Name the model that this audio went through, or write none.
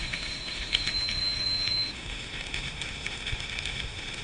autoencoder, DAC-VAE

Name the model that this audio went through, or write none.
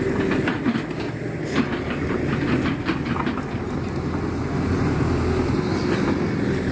none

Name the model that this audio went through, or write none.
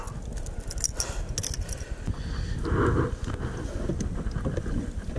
none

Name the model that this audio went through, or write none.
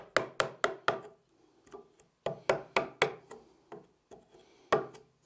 none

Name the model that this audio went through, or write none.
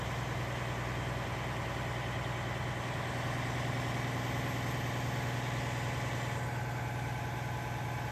none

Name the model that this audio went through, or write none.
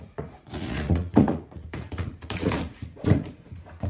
vocoder, Vocos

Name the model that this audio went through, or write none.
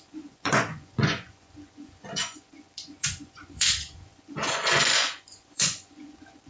vocoder, Vocos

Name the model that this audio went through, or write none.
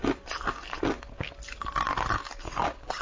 none